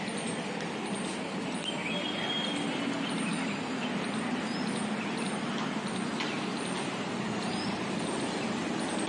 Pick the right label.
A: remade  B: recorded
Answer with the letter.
B